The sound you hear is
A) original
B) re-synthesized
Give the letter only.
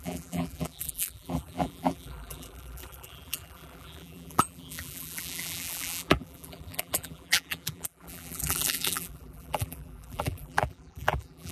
B